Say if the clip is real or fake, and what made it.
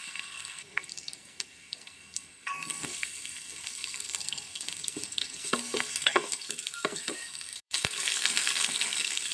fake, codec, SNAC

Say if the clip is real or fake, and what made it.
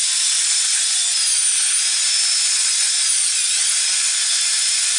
real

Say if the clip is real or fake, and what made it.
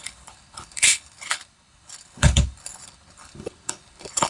fake, codec, HILCodec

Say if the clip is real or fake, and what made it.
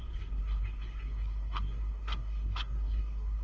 fake, codec, SNAC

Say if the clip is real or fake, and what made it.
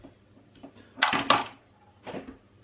real